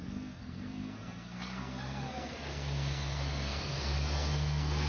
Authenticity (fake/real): fake